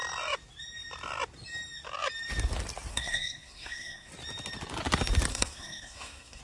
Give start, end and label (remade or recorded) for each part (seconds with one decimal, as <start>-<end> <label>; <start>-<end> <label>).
0.0-2.9 recorded; 2.9-4.1 remade; 4.1-5.3 recorded; 5.3-6.4 remade